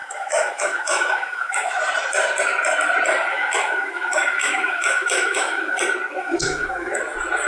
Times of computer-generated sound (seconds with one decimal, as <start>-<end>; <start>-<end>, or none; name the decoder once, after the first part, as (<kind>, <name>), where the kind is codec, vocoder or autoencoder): 0.0-1.8 (autoencoder, DAC-VAE); 3.3-5.8; 6.2-7.0